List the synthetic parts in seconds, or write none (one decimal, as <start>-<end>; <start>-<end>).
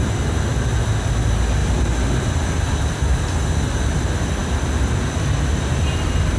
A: 1.6-4.0